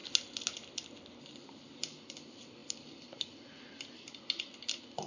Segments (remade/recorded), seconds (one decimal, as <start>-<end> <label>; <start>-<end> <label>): 0.0-5.1 recorded